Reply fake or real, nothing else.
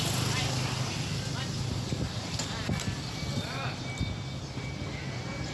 real